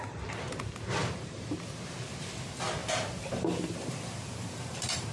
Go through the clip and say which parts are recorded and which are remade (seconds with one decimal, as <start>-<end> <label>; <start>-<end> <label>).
0.0-1.0 recorded; 1.0-1.5 remade; 1.5-2.8 recorded; 2.8-5.1 remade